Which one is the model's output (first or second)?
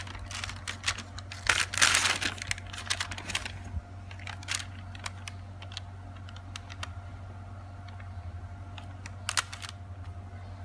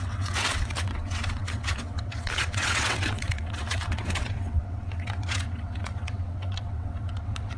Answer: second